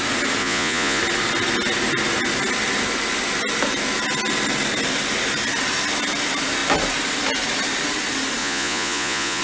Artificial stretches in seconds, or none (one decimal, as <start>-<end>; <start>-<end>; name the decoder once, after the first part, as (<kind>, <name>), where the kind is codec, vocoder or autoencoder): 0.4-1.0 (vocoder, Vocos); 8.4-9.4